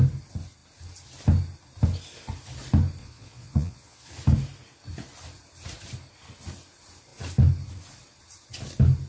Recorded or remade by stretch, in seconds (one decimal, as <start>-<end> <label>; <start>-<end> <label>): 0.0-3.0 recorded; 3.0-4.1 remade; 4.1-9.1 recorded